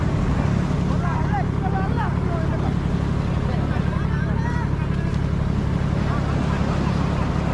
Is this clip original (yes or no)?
yes